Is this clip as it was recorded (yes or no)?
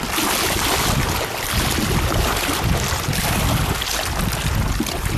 yes